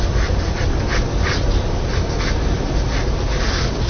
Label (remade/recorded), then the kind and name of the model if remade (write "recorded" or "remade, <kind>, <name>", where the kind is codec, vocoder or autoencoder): recorded